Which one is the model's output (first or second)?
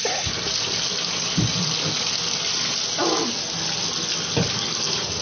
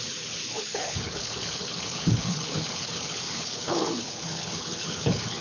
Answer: second